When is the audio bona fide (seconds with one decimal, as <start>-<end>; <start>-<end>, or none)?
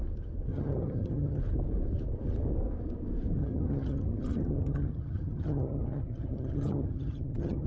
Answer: 0.0-0.5; 1.4-3.4